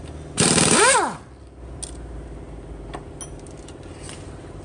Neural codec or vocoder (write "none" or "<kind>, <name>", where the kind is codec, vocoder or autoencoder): none